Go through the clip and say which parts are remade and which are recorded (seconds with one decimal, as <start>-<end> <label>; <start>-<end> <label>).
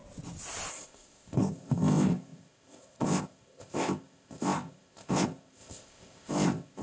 0.0-0.7 recorded; 0.7-6.8 remade